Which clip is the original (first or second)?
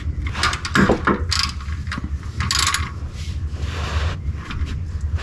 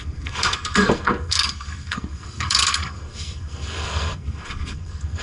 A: first